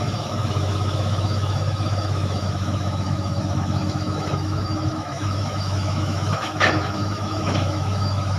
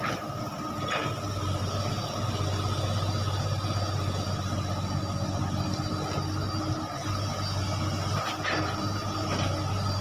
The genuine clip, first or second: second